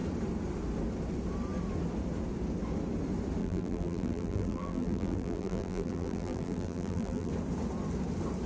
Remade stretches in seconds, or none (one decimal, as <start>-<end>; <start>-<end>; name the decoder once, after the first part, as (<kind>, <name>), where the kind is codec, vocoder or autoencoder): 3.4-7.3 (vocoder, BigVGAN v2)